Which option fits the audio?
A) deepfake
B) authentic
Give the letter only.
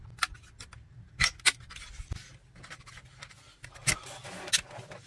B